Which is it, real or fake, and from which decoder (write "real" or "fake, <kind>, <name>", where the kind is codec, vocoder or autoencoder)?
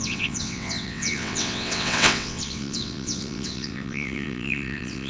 fake, vocoder, WaveNeXt